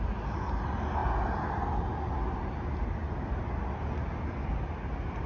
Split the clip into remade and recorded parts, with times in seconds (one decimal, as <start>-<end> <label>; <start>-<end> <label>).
0.0-5.3 recorded